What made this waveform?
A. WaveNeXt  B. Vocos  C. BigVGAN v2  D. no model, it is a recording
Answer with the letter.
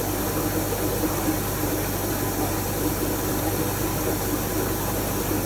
D